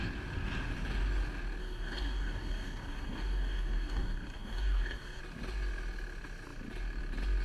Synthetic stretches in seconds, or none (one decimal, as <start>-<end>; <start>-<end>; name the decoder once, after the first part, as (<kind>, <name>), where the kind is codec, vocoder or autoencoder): 1.6-5.2 (codec, DAC)